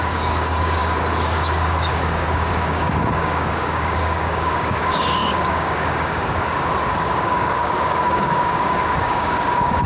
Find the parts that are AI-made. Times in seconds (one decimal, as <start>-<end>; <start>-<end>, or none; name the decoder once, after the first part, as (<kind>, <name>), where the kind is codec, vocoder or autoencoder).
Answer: 0.0-9.9 (codec, DAC)